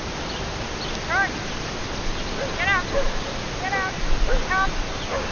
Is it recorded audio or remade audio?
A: recorded